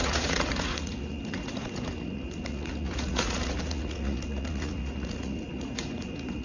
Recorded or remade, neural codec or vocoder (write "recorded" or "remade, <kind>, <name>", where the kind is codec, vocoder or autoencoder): remade, vocoder, Vocos